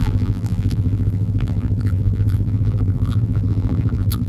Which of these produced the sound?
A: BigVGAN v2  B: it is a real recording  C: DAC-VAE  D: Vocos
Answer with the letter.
A